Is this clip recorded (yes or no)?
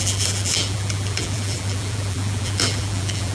no